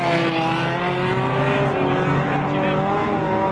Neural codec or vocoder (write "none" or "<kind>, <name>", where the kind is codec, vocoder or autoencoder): none